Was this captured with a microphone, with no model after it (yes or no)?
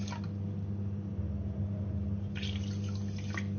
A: yes